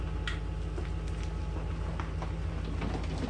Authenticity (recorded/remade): recorded